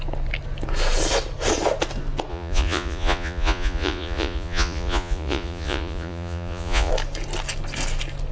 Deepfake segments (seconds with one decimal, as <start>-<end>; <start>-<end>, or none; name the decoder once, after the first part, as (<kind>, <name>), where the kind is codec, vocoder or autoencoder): 2.3-6.9 (vocoder, Vocos)